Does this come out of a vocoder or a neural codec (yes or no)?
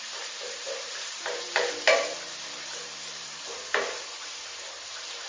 yes